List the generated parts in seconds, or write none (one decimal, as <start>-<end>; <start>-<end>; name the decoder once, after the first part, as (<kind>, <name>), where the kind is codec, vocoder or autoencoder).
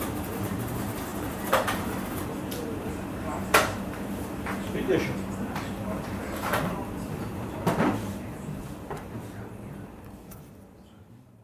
0.0-6.8 (vocoder, BigVGAN v2); 11.0-11.4